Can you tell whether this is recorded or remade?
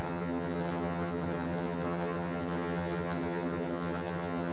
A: remade